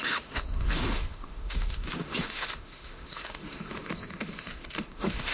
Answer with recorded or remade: remade